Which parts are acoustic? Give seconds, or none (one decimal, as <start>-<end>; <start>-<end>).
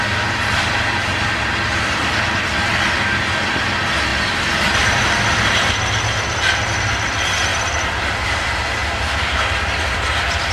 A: 0.0-8.8; 9.4-10.5